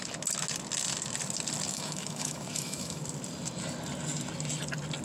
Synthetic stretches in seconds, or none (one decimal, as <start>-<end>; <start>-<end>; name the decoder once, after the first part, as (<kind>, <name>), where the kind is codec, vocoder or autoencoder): 1.7-3.0 (autoencoder, DAC-VAE)